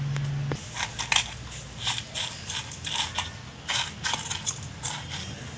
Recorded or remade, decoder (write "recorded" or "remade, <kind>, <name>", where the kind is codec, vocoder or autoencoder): recorded